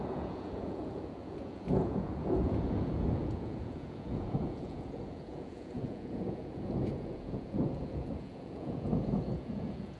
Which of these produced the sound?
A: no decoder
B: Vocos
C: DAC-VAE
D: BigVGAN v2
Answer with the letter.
B